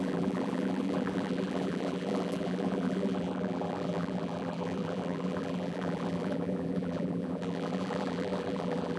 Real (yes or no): no